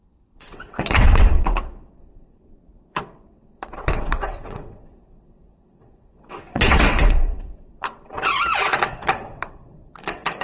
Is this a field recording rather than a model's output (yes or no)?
no